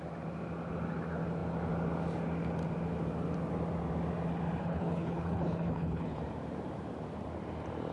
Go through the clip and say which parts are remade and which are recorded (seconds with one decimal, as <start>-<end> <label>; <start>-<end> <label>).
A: 0.0-4.6 recorded; 4.6-6.2 remade; 6.2-7.9 recorded